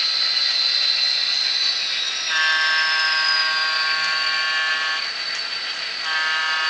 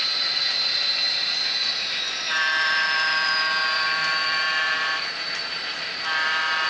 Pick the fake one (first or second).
second